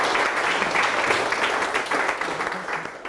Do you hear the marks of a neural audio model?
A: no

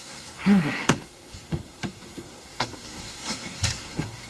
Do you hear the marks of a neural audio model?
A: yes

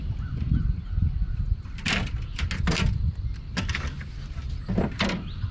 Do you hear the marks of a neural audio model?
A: no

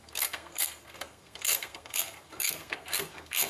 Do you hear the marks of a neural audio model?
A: yes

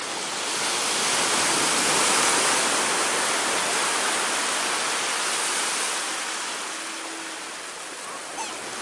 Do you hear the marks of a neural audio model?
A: no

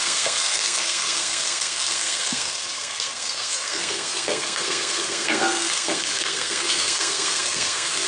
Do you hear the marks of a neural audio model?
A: yes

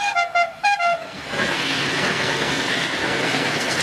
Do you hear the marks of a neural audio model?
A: yes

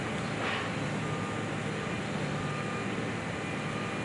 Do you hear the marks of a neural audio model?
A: no